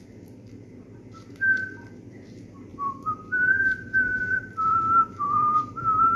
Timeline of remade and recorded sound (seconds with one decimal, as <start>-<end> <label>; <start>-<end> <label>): 0.0-2.7 recorded; 2.7-3.6 remade; 3.6-4.3 recorded; 4.3-6.2 remade